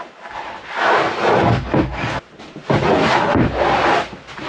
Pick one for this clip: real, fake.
real